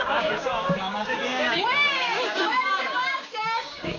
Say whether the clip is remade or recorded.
remade